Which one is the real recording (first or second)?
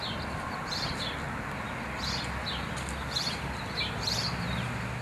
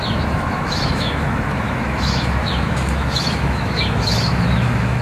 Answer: first